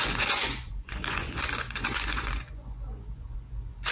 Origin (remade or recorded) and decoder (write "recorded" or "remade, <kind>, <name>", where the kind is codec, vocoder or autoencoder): remade, vocoder, Vocos